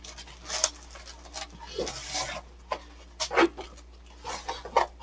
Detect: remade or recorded recorded